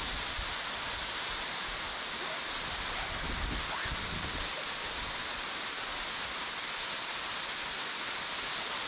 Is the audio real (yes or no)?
yes